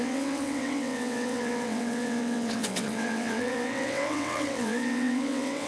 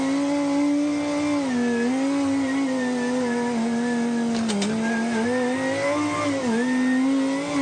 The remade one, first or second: first